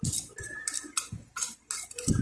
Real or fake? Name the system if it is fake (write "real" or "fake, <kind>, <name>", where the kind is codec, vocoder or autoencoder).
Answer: real